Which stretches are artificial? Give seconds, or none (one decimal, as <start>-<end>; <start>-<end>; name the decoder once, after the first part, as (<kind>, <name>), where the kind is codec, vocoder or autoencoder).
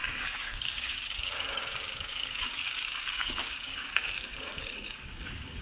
0.0-5.6 (codec, DAC)